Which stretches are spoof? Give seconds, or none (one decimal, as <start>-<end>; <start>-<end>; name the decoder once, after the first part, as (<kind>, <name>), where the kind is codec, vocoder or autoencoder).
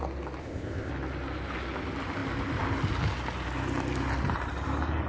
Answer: 0.4-0.9 (codec, ZipCodec)